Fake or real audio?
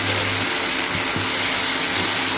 real